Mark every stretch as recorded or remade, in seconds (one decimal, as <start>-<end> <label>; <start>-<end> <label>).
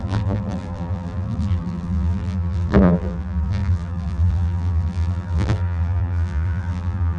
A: 0.0-7.2 remade